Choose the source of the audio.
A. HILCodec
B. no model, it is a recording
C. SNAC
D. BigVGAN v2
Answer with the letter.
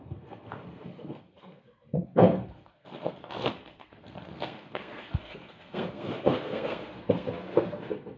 C